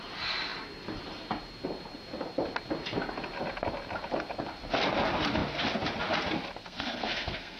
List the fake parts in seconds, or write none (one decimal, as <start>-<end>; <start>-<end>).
6.6-7.6